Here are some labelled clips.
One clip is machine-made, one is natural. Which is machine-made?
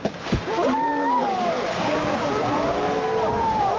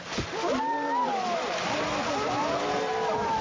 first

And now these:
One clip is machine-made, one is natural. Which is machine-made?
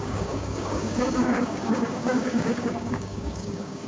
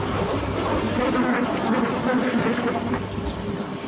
first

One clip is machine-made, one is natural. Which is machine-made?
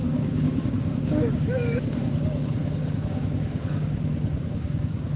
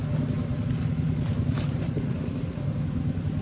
first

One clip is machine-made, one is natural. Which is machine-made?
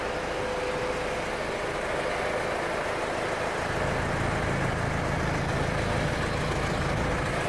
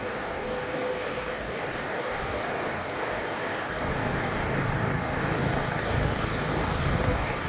second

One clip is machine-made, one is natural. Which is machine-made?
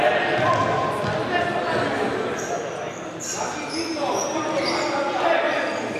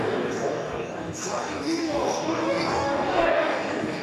second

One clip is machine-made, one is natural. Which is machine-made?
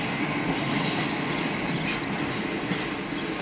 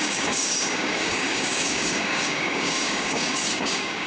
second